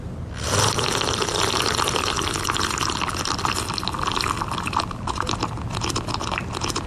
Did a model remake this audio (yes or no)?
no